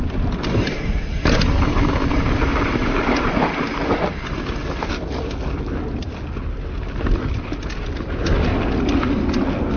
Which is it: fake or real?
real